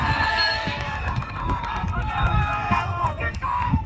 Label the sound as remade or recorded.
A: remade